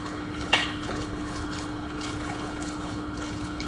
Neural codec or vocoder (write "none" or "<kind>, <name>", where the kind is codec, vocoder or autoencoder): codec, HILCodec